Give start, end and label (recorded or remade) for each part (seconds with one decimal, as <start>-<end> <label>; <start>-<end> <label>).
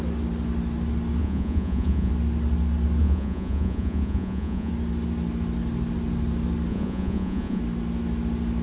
0.0-1.2 recorded; 1.2-2.1 remade; 2.1-3.0 recorded; 3.0-4.7 remade; 4.7-6.7 recorded; 6.7-7.6 remade; 7.6-8.6 recorded